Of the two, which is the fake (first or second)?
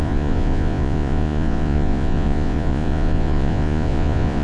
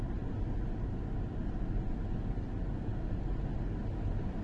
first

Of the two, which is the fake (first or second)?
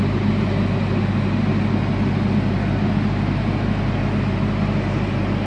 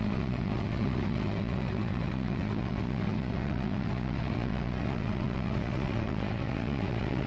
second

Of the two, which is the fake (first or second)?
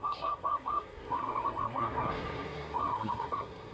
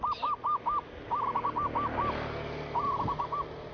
first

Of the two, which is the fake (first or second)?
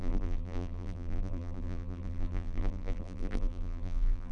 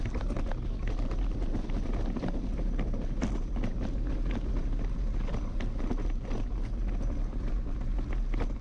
first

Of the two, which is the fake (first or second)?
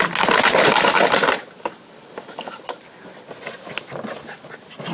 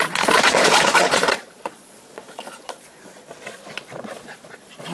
second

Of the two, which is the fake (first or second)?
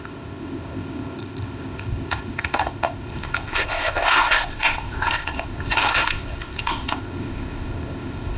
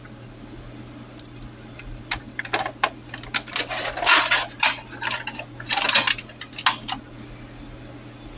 first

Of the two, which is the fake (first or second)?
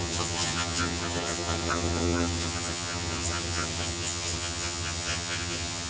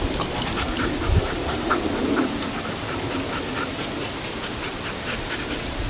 first